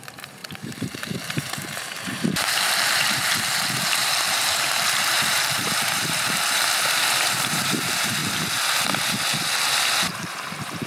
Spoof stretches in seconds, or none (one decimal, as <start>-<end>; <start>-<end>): 0.0-8.2; 10.1-10.9